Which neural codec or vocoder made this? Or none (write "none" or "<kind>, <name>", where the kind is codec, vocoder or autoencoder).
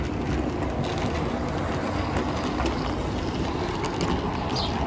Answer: none